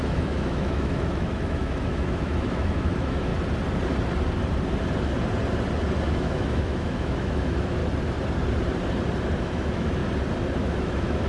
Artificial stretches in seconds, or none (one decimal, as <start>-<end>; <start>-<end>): 0.0-3.3; 6.1-7.8; 9.4-10.0; 10.6-11.3